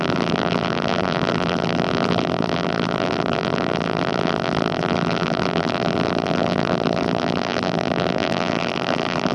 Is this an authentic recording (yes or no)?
no